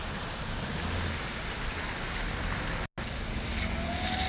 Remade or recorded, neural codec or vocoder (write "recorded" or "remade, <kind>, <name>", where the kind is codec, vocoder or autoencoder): recorded